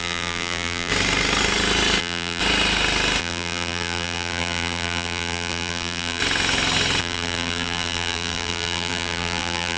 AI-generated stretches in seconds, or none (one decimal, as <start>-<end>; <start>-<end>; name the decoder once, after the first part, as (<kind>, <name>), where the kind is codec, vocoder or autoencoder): 0.0-0.9 (vocoder, BigVGAN v2); 2.0-2.4; 3.2-6.2; 7.0-9.8